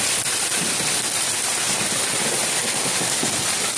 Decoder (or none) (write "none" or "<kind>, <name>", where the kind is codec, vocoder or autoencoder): none